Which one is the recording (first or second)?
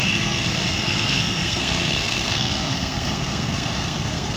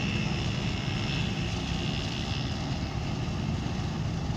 second